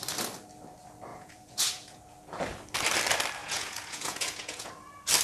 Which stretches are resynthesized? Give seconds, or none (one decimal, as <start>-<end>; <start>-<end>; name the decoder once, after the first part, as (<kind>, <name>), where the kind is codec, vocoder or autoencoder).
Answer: 1.1-2.0 (vocoder, Vocos); 3.4-4.7